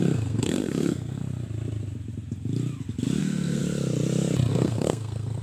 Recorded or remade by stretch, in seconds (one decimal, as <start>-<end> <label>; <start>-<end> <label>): 0.0-1.2 remade; 1.2-3.2 recorded; 3.2-3.6 remade; 3.6-4.5 recorded; 4.5-5.4 remade